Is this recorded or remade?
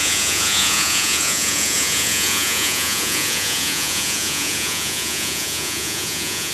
remade